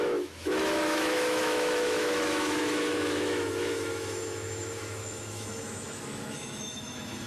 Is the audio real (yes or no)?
no